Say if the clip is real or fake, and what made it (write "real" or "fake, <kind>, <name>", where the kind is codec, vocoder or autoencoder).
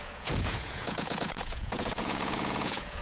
fake, vocoder, Vocos